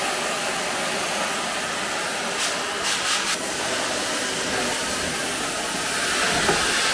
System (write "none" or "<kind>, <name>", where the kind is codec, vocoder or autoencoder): none